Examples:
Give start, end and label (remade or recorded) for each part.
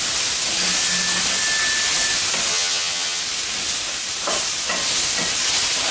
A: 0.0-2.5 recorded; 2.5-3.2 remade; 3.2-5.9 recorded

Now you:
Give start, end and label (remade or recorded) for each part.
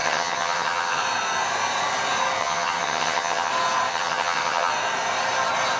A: 0.0-1.0 remade; 1.0-2.4 recorded; 2.4-3.5 remade; 3.5-3.9 recorded; 3.9-4.7 remade; 4.7-5.8 recorded